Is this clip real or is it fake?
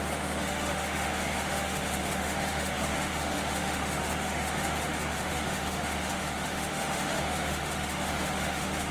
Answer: fake